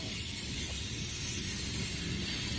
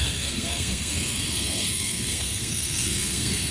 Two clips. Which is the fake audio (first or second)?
second